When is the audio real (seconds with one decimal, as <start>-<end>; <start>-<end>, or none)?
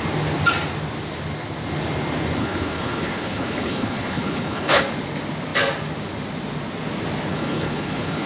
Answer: 0.0-2.4; 4.8-7.3